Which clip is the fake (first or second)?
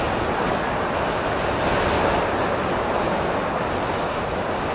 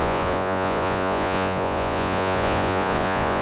second